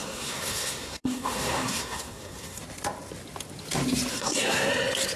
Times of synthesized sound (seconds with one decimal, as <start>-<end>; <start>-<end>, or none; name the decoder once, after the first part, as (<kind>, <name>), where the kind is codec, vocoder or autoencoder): 0.0-2.6 (codec, SNAC); 4.1-4.7

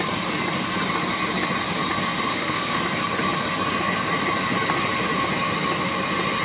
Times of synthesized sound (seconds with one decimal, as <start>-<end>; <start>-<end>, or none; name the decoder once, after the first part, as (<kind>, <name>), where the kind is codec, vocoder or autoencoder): 2.3-2.8 (codec, SNAC)